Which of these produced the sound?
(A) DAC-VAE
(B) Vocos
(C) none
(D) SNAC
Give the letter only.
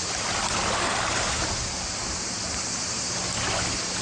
C